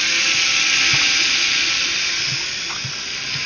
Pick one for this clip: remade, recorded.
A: recorded